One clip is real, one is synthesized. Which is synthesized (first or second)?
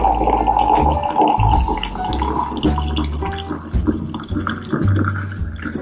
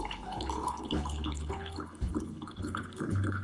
second